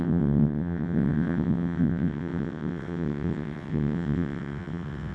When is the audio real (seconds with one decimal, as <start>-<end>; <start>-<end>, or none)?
none